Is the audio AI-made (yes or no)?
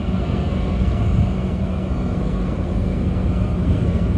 yes